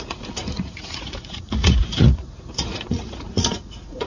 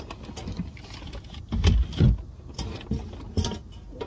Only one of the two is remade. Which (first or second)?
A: first